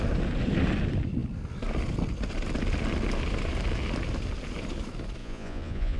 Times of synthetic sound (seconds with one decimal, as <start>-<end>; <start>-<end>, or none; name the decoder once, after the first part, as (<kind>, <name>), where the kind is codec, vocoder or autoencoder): 5.2-6.0 (vocoder, Vocos)